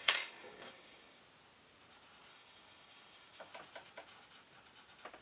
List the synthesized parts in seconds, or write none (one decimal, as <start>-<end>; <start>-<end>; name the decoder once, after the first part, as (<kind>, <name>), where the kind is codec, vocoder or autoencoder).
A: 0.0-1.2 (codec, DAC); 2.3-3.5